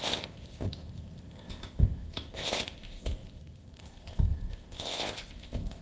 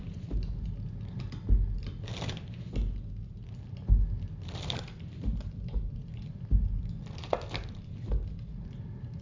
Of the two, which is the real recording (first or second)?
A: second